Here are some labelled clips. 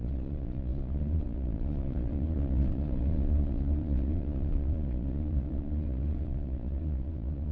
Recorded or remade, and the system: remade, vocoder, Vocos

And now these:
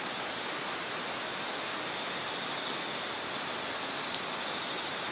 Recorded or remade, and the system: recorded